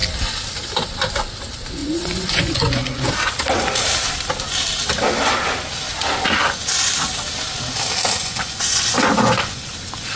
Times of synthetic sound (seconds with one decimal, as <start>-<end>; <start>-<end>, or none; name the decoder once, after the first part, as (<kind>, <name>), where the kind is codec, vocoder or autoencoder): 1.8-3.1 (vocoder, Vocos); 8.2-9.7